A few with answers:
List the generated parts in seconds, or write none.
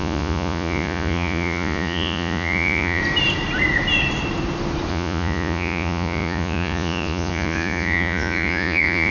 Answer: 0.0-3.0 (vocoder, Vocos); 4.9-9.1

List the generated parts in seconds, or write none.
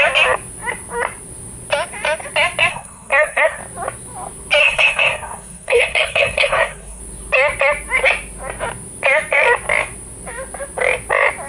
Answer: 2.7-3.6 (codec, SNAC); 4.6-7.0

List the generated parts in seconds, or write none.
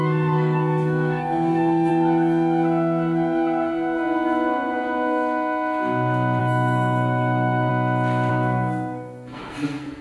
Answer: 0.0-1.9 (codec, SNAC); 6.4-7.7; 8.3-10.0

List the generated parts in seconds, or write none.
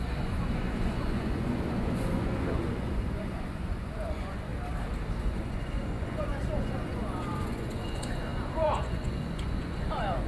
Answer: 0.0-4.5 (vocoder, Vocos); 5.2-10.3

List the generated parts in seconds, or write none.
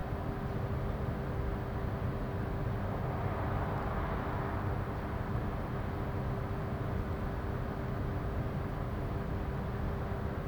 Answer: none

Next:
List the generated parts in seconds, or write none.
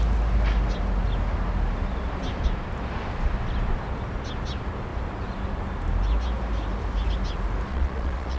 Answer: 7.7-8.4 (vocoder, Vocos)